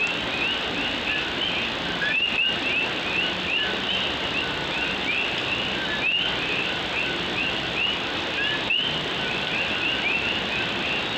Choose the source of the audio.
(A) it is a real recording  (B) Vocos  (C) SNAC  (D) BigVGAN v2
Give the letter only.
A